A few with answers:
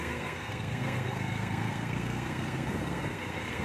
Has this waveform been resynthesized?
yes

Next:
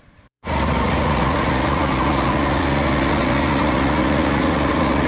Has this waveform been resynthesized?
yes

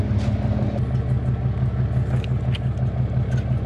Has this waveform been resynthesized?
no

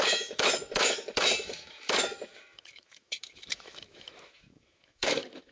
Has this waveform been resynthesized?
yes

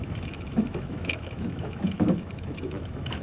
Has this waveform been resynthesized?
yes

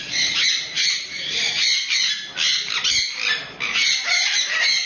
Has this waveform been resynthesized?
no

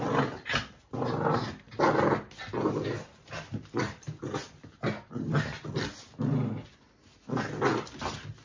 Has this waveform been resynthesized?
no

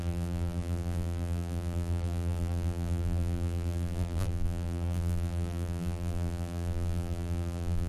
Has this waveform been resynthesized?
yes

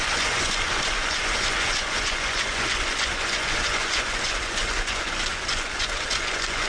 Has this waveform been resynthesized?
yes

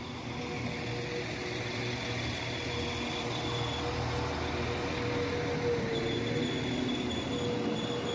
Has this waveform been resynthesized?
no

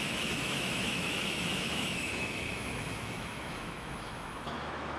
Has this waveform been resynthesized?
yes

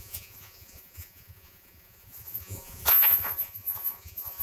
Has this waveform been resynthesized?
yes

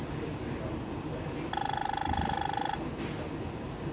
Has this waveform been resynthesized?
no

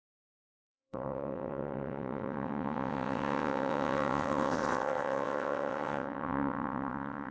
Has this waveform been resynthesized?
yes